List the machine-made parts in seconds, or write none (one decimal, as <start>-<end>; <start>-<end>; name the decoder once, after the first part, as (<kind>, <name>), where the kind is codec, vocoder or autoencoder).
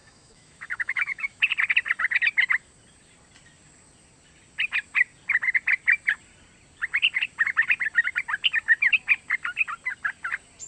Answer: 0.0-1.4 (autoencoder, DAC-VAE)